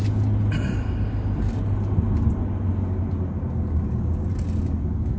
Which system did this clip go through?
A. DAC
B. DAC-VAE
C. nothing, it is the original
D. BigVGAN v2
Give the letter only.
C